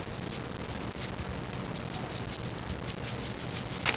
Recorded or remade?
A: recorded